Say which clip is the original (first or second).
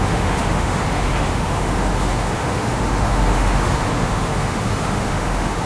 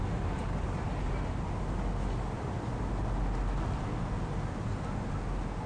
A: second